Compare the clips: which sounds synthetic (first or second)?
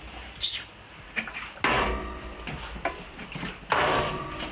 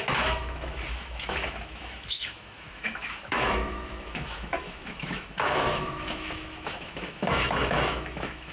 second